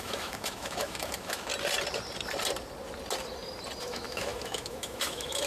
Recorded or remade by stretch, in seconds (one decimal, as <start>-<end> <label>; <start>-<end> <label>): 0.0-1.5 remade; 1.5-3.8 recorded; 3.8-5.5 remade

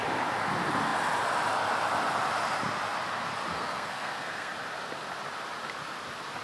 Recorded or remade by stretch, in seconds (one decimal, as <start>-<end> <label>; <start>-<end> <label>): 0.0-3.5 recorded; 3.5-4.5 remade; 4.5-6.4 recorded

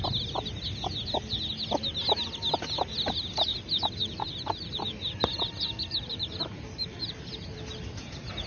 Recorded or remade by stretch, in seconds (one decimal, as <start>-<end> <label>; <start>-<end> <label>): 0.0-3.5 recorded; 3.5-7.9 remade; 7.9-8.5 recorded

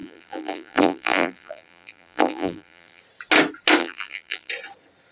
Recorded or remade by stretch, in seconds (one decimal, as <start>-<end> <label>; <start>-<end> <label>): 0.0-3.0 remade; 3.0-3.8 recorded; 3.8-4.5 remade; 4.5-5.1 recorded